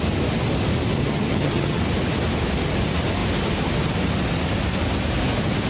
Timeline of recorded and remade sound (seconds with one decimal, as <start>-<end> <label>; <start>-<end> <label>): 0.0-1.0 recorded; 1.0-1.8 remade; 1.8-5.7 recorded